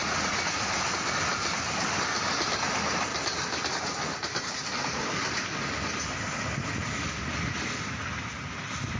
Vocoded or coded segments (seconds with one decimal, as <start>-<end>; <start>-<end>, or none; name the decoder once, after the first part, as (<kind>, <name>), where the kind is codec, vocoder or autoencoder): 0.0-0.5 (vocoder, Vocos)